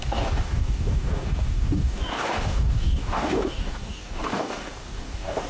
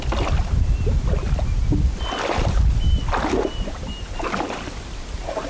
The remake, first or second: first